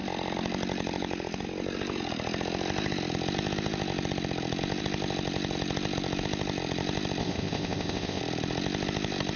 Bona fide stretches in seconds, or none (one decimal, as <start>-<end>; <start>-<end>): 0.0-7.2; 8.2-9.4